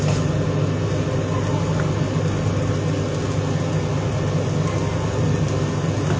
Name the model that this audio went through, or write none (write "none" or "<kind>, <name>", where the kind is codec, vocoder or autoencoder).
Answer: none